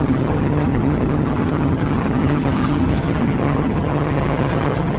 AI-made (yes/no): yes